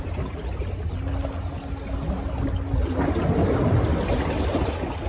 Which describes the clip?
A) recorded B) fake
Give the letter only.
A